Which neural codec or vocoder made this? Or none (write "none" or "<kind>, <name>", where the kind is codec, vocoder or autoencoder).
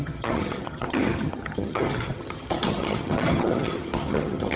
vocoder, HiFi-GAN